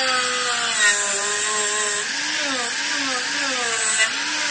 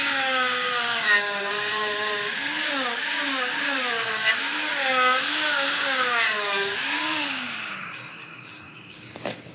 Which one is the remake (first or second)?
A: second